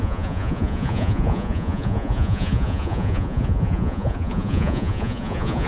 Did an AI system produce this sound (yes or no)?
yes